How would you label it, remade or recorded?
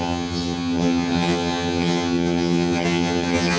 remade